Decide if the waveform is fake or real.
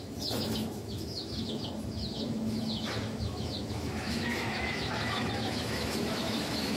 fake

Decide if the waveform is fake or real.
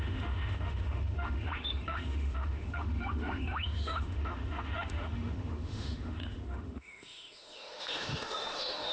fake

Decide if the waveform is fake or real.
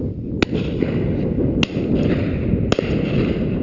real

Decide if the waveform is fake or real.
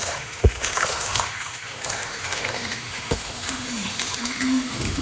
fake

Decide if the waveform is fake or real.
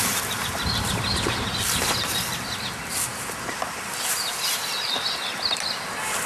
real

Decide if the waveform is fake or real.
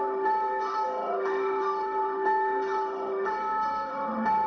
fake